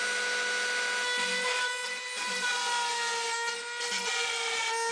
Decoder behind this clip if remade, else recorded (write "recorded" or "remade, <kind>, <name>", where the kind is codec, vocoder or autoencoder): recorded